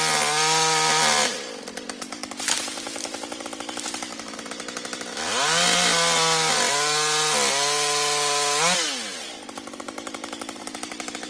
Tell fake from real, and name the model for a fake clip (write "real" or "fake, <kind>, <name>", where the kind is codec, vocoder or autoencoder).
real